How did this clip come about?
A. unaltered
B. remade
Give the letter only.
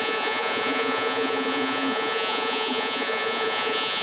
B